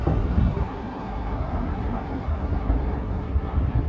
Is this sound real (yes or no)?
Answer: no